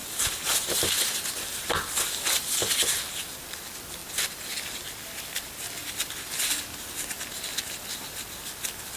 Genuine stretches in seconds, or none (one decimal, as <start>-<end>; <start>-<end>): 1.7-4.0; 4.5-9.0